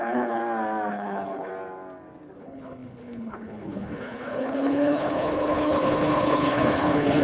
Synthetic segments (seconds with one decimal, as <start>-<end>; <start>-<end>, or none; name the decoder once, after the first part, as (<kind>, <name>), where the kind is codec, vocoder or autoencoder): 0.0-0.4 (codec, HILCodec); 0.9-1.5; 2.4-7.2